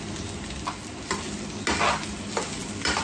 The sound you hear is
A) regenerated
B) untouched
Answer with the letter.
B